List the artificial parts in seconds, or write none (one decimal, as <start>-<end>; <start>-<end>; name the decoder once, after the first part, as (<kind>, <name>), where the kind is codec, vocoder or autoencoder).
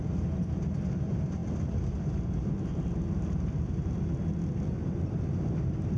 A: none